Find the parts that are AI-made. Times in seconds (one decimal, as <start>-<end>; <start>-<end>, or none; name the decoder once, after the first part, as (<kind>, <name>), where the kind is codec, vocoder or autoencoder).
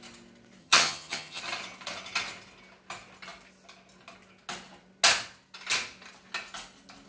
0.6-1.4 (vocoder, HiFi-GAN)